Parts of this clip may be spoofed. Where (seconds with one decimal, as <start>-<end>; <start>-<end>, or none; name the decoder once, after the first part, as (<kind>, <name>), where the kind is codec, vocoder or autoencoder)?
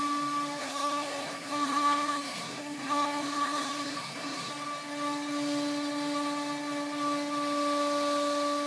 0.6-4.5 (codec, SNAC)